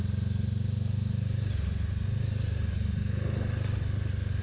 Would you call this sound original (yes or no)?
yes